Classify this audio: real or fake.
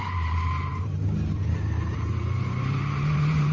fake